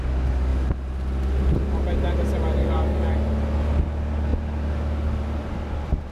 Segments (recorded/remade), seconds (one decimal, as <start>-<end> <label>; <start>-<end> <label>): 0.0-2.6 recorded; 2.6-3.1 remade; 3.1-6.1 recorded